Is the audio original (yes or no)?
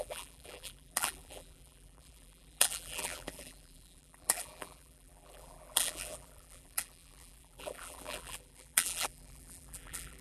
no